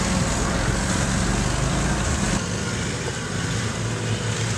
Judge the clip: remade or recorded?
recorded